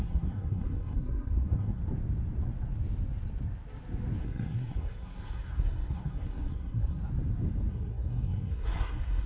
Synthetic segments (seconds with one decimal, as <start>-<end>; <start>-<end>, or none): 0.0-1.8; 4.2-7.0; 7.7-9.3